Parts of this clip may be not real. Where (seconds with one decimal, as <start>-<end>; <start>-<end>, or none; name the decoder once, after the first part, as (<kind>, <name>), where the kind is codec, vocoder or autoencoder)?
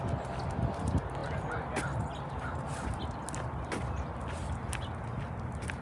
none